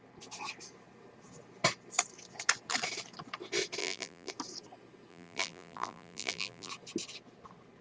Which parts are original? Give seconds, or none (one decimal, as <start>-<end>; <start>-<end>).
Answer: 0.0-3.8; 4.3-5.1; 6.7-7.8